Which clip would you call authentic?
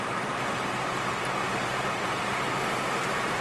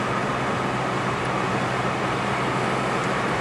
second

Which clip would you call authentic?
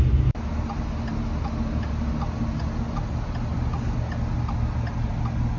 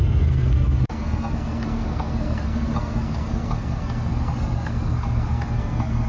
first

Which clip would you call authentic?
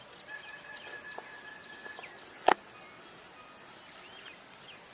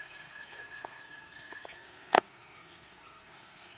first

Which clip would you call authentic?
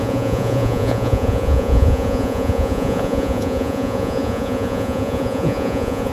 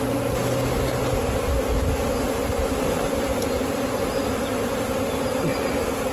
second